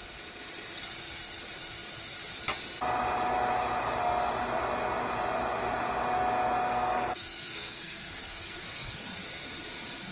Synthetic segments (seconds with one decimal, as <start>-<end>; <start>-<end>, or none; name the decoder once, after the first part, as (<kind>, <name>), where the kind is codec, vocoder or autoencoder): 6.6-9.1 (codec, SNAC)